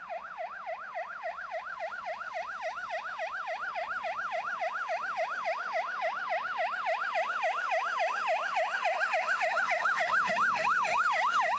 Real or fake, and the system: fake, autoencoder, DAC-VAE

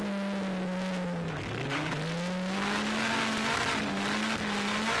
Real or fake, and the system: real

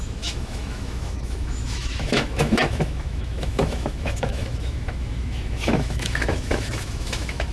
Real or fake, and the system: fake, autoencoder, DAC-VAE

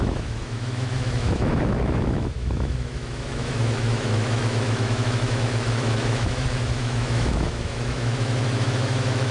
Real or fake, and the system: fake, autoencoder, DAC-VAE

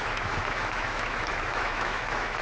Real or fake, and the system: fake, autoencoder, DAC-VAE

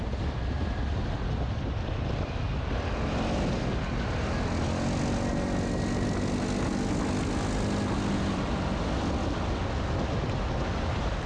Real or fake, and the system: real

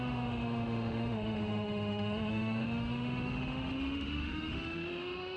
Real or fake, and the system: fake, autoencoder, DAC-VAE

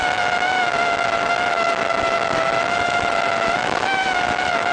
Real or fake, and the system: fake, autoencoder, DAC-VAE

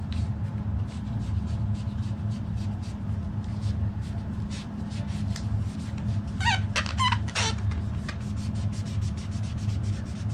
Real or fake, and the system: real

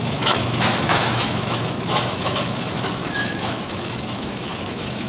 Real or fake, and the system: fake, autoencoder, DAC-VAE